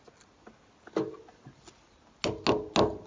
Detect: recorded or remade recorded